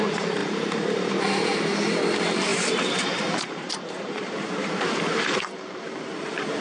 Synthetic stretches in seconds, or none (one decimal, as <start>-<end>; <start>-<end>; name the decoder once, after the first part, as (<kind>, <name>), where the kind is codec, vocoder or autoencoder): 0.0-6.6 (vocoder, BigVGAN v2)